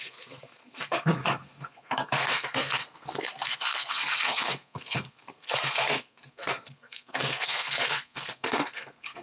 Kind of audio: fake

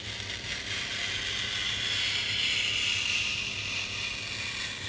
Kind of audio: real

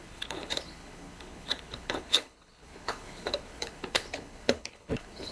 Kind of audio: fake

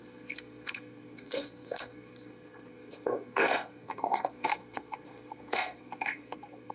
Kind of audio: fake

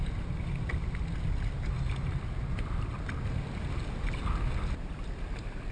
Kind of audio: real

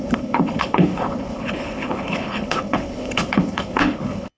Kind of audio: fake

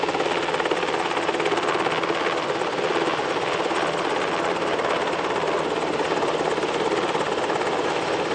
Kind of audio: real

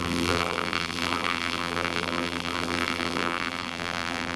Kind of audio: fake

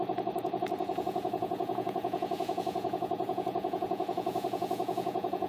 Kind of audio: fake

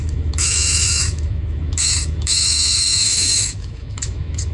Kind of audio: fake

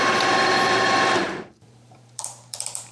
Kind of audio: fake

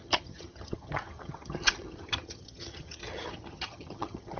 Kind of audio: fake